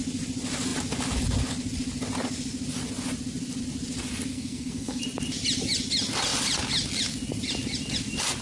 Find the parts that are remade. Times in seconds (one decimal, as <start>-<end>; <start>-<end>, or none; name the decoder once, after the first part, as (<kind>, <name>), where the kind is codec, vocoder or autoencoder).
4.3-5.0 (codec, SNAC)